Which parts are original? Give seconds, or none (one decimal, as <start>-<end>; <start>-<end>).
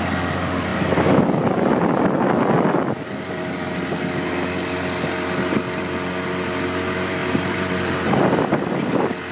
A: 0.0-0.7; 1.7-7.2; 8.2-9.3